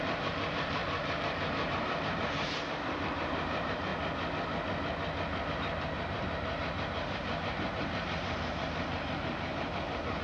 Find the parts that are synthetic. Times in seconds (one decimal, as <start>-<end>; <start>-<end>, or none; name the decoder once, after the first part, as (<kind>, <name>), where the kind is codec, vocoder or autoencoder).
0.0-3.9 (vocoder, BigVGAN v2); 5.5-10.2